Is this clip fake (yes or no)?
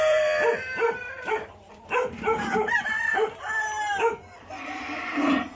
yes